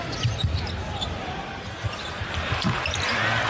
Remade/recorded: recorded